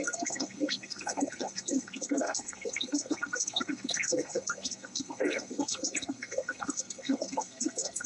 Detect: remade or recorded remade